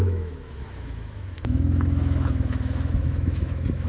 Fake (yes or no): yes